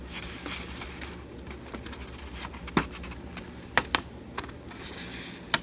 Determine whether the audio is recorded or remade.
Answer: recorded